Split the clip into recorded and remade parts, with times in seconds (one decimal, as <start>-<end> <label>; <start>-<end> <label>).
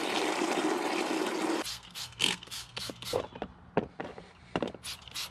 0.0-1.7 recorded; 1.7-3.2 remade; 3.2-5.3 recorded